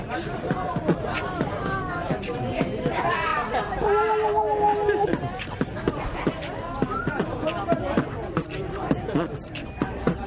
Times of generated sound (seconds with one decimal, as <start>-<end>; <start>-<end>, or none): none